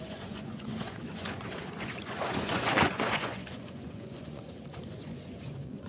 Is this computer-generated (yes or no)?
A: yes